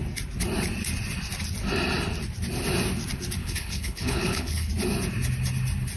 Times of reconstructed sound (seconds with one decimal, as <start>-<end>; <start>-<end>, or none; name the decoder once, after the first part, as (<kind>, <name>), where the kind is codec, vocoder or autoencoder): 3.4-4.7 (codec, HILCodec)